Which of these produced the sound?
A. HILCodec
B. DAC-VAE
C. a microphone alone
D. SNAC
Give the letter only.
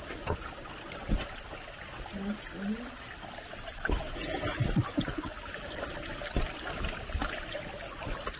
C